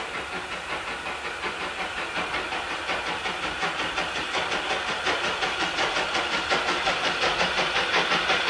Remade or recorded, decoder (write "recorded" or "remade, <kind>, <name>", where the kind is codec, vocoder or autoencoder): recorded